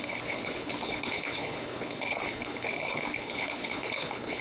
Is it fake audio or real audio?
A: fake